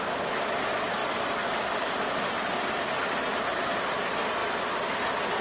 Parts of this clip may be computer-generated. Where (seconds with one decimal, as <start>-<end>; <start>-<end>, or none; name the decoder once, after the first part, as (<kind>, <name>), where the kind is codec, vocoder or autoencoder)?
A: 4.4-5.0 (vocoder, BigVGAN v2)